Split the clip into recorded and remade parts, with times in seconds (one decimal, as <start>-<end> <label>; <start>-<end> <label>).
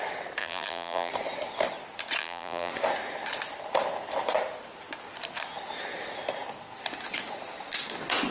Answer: 0.0-0.4 recorded; 0.4-1.1 remade; 1.1-2.2 recorded; 2.2-2.7 remade; 2.7-8.3 recorded